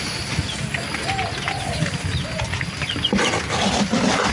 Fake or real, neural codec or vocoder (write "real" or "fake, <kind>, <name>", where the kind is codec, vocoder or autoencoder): real